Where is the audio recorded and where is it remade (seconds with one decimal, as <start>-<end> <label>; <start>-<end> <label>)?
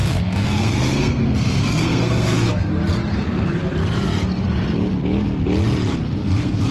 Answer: 0.0-2.7 remade; 2.7-3.1 recorded; 3.1-3.6 remade; 3.6-6.2 recorded; 6.2-6.7 remade